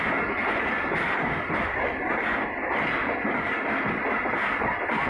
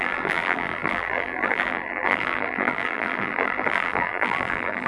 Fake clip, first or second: second